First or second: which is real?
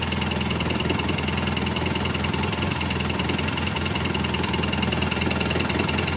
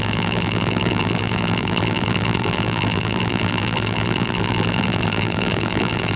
first